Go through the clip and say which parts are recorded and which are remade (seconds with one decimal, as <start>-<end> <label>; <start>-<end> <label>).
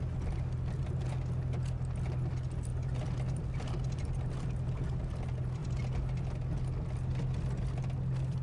0.0-8.4 recorded